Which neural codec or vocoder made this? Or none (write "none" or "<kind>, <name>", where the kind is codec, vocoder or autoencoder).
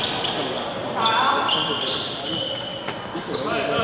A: none